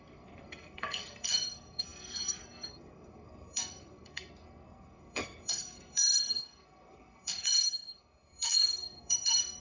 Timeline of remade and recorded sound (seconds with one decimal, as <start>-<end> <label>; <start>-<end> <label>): 0.0-9.6 remade